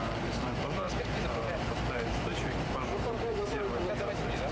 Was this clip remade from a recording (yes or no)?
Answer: yes